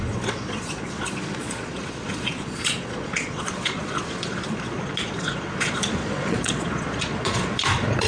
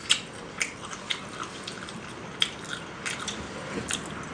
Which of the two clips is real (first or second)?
second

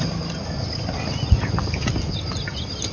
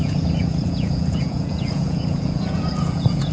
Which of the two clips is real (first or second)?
first